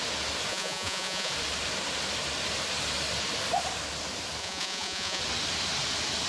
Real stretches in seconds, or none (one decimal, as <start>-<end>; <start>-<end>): 0.0-0.5; 1.3-4.4; 5.2-6.3